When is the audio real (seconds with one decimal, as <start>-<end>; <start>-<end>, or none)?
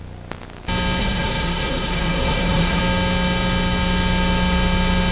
0.0-1.0; 2.8-5.1